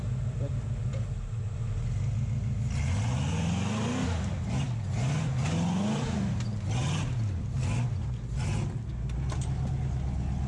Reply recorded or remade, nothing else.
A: recorded